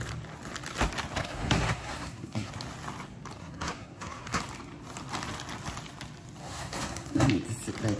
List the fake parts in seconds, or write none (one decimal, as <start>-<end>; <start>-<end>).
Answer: 1.2-2.5; 3.4-4.4; 6.4-7.3